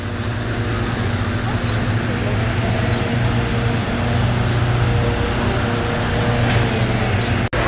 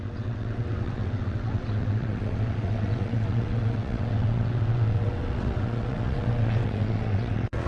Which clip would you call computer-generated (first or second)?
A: second